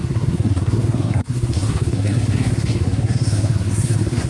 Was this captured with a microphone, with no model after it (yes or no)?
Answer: no